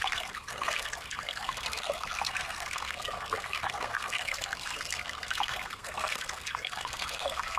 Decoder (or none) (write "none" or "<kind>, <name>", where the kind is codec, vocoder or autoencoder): codec, SNAC